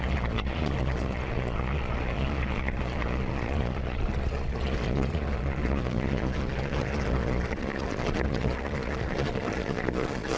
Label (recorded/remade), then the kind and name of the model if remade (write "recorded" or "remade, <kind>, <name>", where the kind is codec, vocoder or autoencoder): remade, vocoder, Vocos